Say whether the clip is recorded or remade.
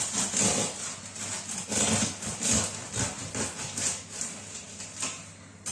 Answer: recorded